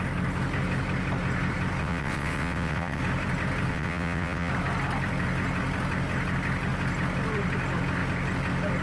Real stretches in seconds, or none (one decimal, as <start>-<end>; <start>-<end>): 0.0-1.8; 3.0-3.7; 4.5-8.8